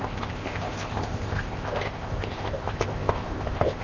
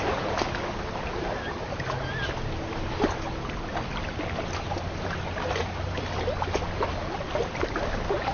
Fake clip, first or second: first